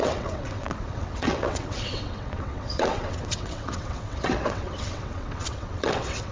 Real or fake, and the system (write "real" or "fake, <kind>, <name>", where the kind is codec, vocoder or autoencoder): fake, vocoder, WaveNeXt